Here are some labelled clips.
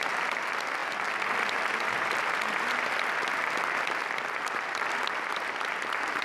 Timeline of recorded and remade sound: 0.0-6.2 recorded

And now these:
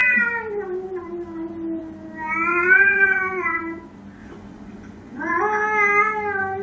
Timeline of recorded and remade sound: 0.0-2.5 recorded; 2.5-3.6 remade; 3.6-4.2 recorded; 4.2-5.4 remade; 5.4-6.6 recorded

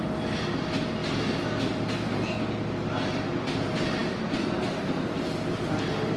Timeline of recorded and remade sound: 0.0-6.2 recorded

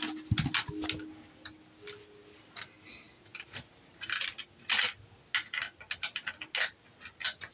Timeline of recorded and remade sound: 0.0-7.5 recorded

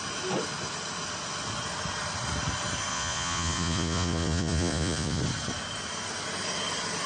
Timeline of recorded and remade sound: 0.0-2.9 recorded; 2.9-5.2 remade; 5.2-7.1 recorded